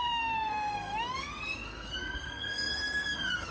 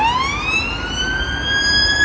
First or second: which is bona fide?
second